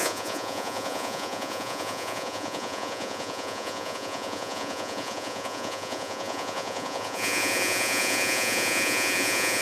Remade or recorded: remade